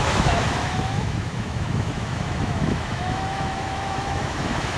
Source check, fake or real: fake